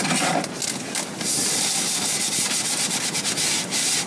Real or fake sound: real